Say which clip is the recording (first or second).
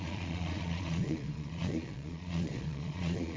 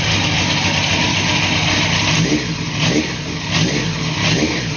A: second